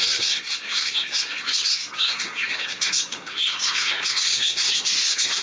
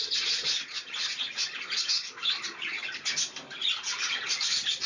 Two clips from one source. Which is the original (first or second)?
second